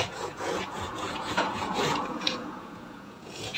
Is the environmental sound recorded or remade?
remade